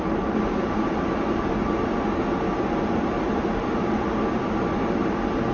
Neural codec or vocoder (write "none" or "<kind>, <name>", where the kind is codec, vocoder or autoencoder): none